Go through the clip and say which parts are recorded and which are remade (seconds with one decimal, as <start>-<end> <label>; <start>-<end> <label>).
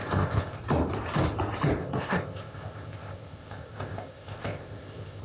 0.0-0.6 remade; 0.6-1.8 recorded; 1.8-5.2 remade